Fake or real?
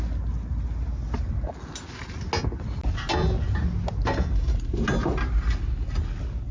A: real